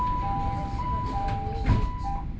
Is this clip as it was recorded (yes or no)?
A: yes